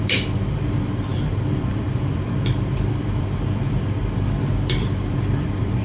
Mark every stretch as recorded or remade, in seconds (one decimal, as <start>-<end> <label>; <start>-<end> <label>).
0.0-5.8 remade